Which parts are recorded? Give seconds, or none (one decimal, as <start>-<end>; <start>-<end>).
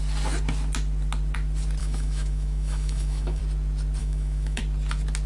0.0-1.8; 3.4-4.0; 4.6-5.3